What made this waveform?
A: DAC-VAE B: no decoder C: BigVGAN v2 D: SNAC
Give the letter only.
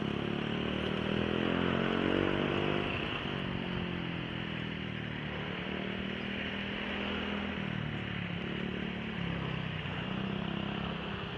B